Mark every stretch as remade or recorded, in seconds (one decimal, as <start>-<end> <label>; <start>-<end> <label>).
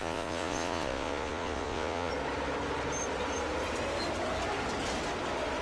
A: 0.0-2.1 remade; 2.1-5.6 recorded